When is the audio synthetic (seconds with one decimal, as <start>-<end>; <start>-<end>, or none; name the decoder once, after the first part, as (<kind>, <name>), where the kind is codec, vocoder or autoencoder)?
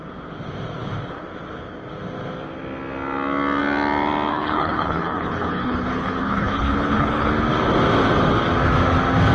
4.3-7.3 (codec, HILCodec)